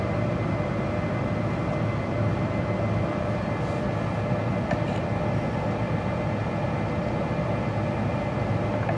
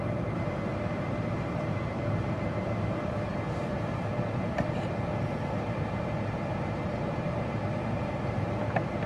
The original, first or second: first